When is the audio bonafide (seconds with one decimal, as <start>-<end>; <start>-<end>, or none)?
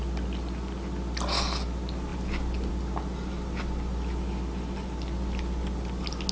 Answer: 0.0-6.3